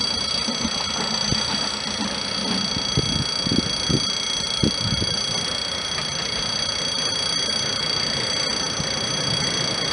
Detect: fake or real real